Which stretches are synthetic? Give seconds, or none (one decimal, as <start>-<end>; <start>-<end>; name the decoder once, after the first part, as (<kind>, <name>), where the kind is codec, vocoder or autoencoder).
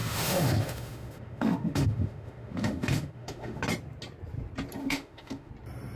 0.0-3.6 (autoencoder, DAC-VAE); 4.8-5.5